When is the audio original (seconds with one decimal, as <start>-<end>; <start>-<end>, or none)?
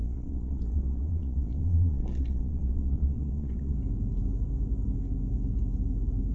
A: 3.8-6.3